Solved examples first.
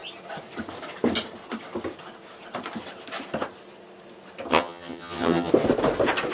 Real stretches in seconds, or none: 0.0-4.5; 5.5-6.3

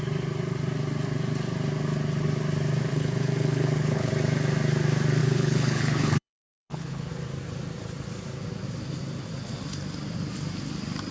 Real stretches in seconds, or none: 0.0-2.9; 4.1-5.2; 7.1-11.1

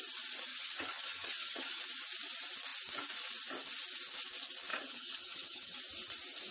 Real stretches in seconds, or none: 0.0-0.5; 1.8-4.7; 5.8-6.5

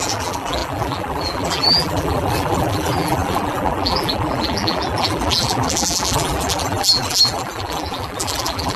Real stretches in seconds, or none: none

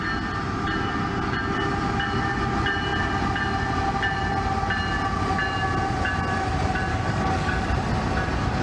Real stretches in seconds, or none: 0.0-6.9; 7.7-8.6

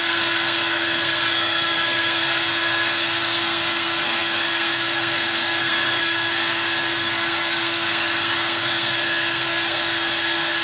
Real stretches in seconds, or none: none

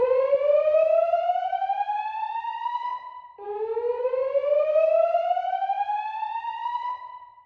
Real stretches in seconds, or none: 0.0-7.5